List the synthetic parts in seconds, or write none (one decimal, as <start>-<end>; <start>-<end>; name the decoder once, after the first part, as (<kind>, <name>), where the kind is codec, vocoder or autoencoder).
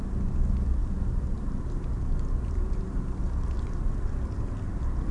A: 0.8-3.9 (vocoder, BigVGAN v2)